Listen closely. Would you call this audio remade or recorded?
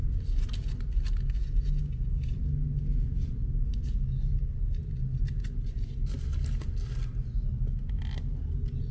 recorded